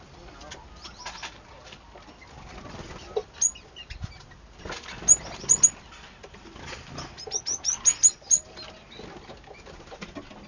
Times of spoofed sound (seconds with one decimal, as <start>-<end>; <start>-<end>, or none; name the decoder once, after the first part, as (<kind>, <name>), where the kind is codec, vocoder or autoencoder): none